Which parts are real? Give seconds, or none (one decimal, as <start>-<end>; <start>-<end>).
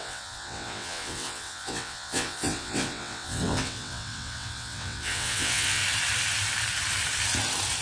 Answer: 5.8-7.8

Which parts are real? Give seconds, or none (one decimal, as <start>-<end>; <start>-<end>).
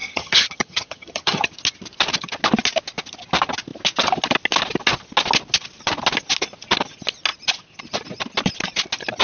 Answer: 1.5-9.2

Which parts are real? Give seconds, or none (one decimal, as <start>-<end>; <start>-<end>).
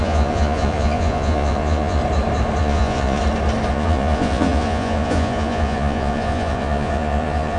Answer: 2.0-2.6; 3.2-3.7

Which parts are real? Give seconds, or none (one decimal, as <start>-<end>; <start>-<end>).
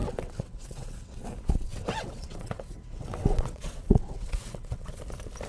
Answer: 1.2-1.7; 5.0-5.5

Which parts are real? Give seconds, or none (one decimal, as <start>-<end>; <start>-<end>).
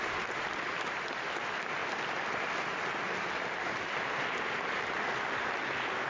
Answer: 0.0-6.1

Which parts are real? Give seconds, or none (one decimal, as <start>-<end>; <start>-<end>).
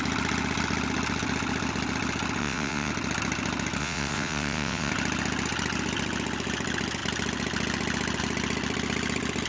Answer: 0.0-2.4; 2.9-3.8; 4.9-9.5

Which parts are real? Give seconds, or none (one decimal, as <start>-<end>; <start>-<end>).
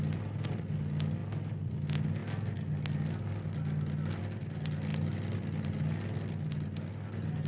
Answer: 0.0-7.5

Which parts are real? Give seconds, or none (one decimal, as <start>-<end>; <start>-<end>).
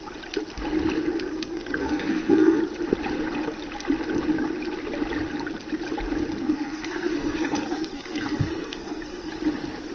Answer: 0.0-1.3; 2.6-6.4; 9.3-9.9